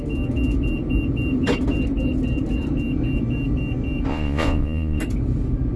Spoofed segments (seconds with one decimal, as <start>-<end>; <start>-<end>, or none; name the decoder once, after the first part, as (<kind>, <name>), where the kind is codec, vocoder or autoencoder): 4.1-5.0 (vocoder, Vocos)